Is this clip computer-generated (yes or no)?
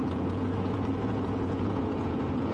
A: yes